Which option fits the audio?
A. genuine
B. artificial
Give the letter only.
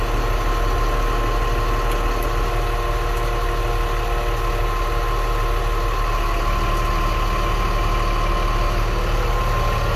A